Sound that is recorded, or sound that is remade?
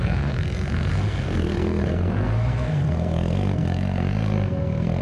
remade